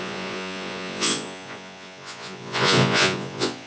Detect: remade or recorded remade